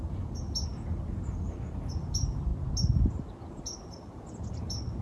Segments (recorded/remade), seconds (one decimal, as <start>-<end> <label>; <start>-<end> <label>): 0.0-2.5 remade; 2.5-3.5 recorded; 3.5-5.0 remade